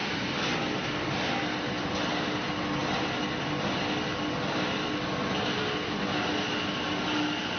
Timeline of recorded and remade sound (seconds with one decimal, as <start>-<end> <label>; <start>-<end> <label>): 0.0-7.6 recorded